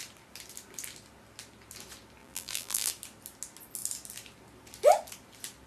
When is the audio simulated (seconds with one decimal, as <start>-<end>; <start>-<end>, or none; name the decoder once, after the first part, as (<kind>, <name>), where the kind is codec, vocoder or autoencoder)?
2.2-2.9 (vocoder, BigVGAN v2)